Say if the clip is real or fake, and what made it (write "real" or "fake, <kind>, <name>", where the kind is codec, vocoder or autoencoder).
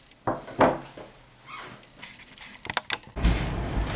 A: real